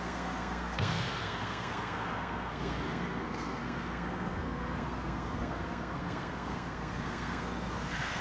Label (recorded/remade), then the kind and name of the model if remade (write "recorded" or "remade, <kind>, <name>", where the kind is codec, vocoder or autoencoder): remade, codec, SNAC